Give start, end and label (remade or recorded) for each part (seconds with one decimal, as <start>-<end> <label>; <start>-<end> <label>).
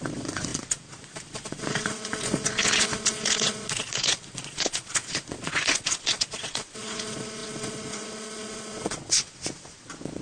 0.0-10.2 remade